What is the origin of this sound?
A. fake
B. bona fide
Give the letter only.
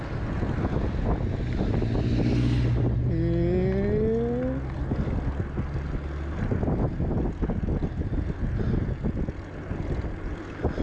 B